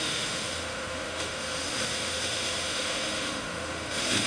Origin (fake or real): fake